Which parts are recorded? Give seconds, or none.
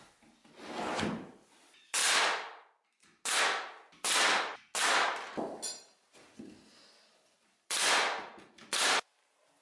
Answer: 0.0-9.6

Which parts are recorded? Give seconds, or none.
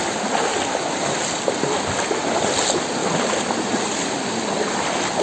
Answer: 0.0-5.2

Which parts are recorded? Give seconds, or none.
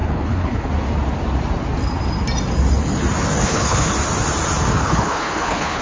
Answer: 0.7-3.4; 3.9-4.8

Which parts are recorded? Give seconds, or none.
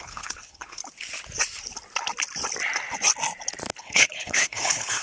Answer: 0.8-3.8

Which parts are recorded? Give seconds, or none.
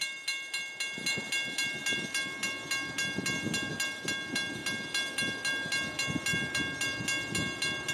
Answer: 0.0-7.9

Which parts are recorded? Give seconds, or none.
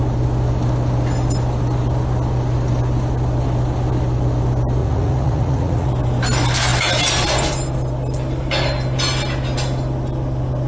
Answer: 0.0-4.8; 5.9-10.7